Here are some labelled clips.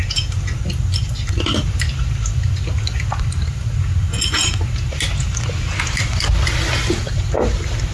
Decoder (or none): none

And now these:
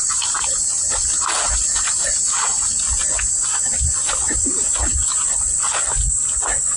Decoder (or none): none